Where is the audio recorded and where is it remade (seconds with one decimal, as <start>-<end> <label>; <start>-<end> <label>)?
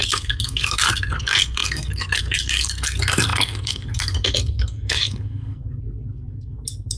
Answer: 0.0-7.0 remade